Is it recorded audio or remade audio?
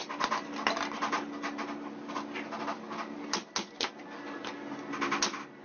recorded